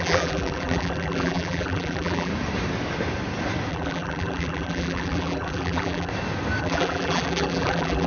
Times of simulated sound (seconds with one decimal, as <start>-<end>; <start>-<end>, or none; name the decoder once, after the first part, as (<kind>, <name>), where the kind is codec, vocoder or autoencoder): 0.0-2.3 (vocoder, BigVGAN v2); 3.7-6.1; 6.6-8.1